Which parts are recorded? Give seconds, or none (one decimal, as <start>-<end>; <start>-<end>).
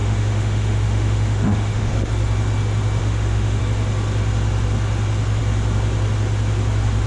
2.1-3.0; 3.6-7.1